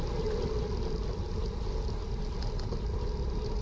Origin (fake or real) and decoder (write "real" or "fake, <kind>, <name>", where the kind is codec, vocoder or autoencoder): real